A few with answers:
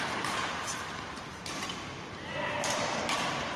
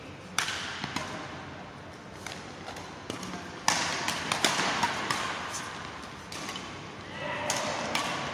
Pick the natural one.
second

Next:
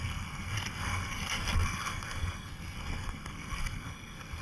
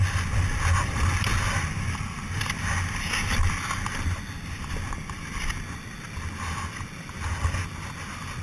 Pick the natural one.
second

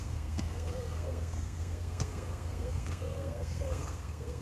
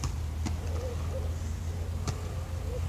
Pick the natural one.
second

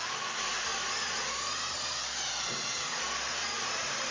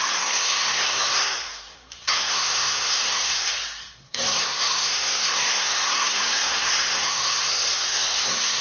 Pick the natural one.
first